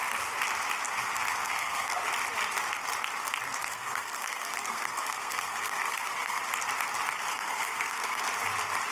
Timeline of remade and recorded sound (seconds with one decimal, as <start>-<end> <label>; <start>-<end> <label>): 0.0-1.4 recorded; 1.4-2.0 remade; 2.0-3.6 recorded; 3.6-6.4 remade; 6.4-7.3 recorded; 7.3-8.2 remade; 8.2-8.9 recorded